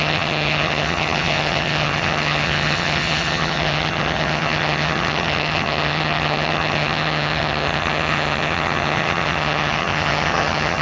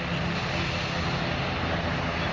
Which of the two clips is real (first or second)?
second